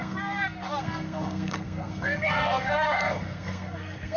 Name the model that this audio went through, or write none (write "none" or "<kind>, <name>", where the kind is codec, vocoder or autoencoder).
codec, SNAC